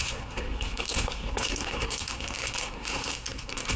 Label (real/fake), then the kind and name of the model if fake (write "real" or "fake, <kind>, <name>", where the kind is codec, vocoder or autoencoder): fake, codec, SNAC